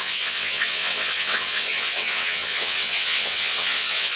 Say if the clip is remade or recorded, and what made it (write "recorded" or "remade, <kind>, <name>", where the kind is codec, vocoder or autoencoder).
remade, vocoder, WaveNeXt